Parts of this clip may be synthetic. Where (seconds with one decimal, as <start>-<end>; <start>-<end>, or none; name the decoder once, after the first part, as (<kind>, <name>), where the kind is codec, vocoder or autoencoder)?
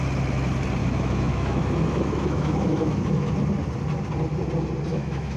0.8-3.3 (autoencoder, DAC-VAE); 4.9-5.4